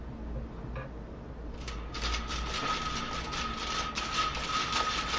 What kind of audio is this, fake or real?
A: real